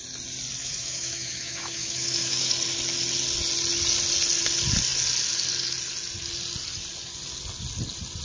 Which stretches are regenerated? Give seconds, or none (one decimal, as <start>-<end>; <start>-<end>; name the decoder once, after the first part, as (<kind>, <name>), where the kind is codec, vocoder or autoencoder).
0.6-2.5 (autoencoder, DAC-VAE)